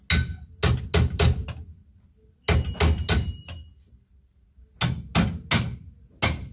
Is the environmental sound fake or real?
real